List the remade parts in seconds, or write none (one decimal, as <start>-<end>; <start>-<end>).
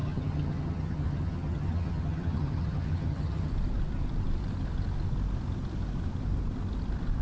0.0-3.5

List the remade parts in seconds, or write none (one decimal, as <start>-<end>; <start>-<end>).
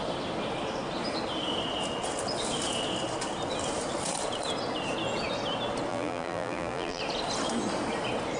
5.9-7.0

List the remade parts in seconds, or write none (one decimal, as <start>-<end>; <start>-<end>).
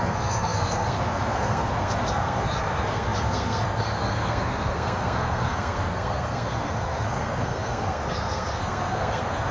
0.0-9.5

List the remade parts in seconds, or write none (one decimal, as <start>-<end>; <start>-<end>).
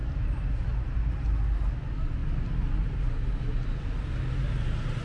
0.0-1.0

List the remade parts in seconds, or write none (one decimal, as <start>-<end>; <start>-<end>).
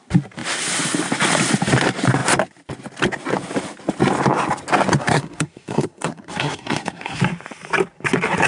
5.0-7.2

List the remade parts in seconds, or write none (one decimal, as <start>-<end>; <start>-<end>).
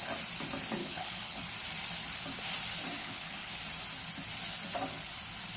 0.8-1.4; 3.0-3.6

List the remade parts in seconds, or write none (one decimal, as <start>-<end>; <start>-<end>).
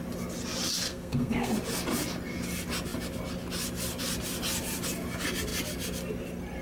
0.9-1.5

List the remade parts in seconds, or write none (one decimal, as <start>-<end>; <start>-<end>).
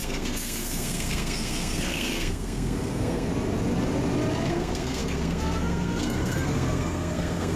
0.0-3.3; 4.5-7.6